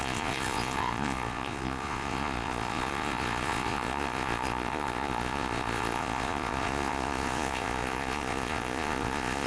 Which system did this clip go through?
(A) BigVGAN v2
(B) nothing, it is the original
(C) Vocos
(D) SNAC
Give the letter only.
C